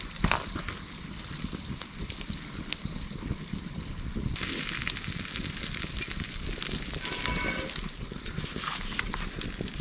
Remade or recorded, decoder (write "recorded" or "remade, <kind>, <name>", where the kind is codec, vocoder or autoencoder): recorded